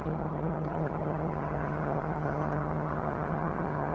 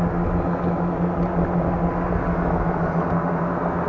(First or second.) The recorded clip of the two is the second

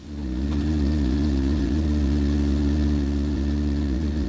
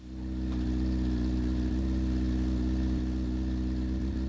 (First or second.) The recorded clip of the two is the second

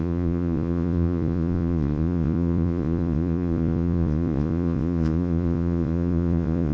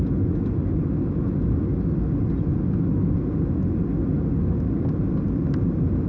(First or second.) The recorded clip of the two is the second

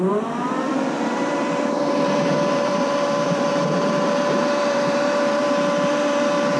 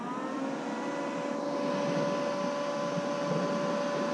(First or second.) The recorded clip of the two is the second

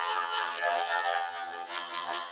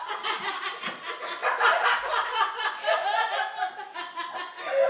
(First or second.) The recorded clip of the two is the second